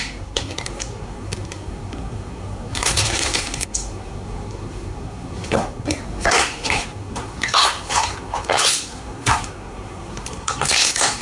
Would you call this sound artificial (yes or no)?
yes